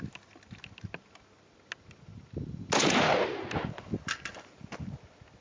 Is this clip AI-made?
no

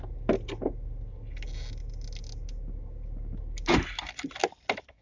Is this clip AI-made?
no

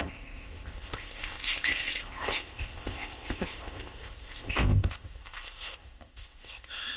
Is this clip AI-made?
yes